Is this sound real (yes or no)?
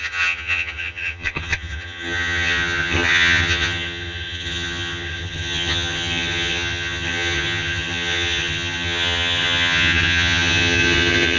no